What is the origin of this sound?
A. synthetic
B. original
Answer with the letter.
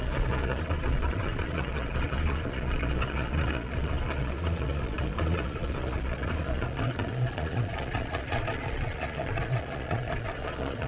A